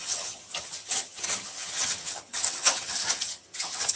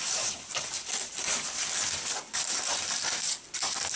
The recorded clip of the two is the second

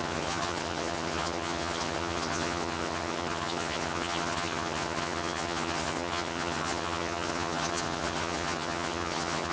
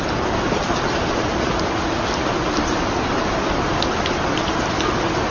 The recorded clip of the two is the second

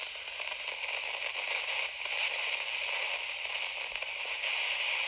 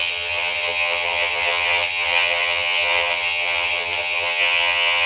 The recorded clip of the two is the first